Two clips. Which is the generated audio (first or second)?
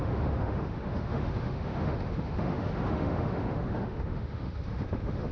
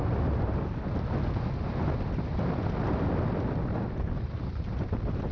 first